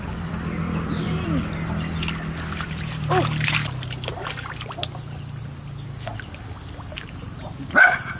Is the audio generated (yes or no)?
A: no